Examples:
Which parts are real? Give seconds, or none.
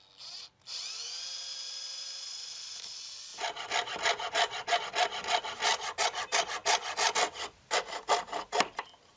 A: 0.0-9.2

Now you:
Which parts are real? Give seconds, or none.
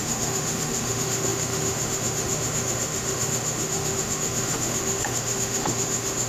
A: none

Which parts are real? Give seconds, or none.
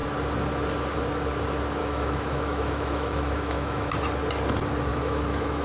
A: 0.0-1.8; 3.9-4.9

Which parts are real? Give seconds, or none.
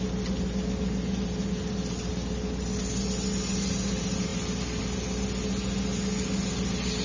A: 0.0-7.0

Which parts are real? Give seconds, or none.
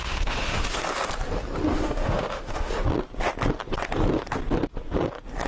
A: 1.1-1.7; 2.7-5.5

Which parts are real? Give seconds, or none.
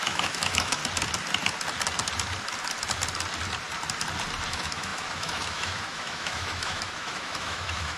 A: 0.8-4.5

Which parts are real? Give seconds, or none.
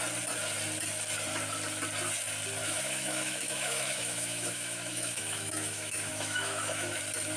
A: 0.0-2.6; 7.0-7.4